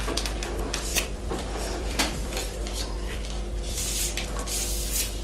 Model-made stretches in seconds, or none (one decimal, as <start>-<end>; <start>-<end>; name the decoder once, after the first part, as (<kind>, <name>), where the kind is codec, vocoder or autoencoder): 0.9-4.0 (vocoder, BigVGAN v2)